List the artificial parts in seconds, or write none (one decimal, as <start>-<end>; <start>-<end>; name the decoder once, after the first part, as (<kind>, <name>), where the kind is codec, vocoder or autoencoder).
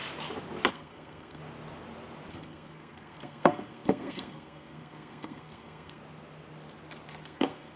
0.7-1.4 (codec, SNAC); 2.3-6.0; 7.2-7.8